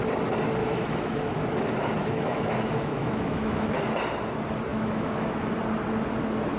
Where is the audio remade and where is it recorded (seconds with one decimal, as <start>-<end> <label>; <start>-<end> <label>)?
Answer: 0.0-0.6 recorded; 0.6-1.5 remade; 1.5-2.0 recorded; 2.0-3.8 remade; 3.8-4.7 recorded; 4.7-5.5 remade; 5.5-6.6 recorded